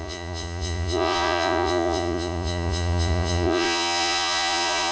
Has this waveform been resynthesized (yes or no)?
yes